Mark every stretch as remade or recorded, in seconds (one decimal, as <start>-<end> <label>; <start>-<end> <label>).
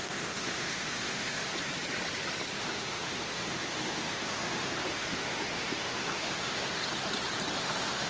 0.0-1.5 remade; 1.5-2.6 recorded; 2.6-6.8 remade; 6.8-7.6 recorded; 7.6-8.1 remade